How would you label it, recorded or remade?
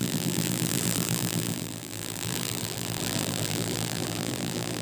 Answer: remade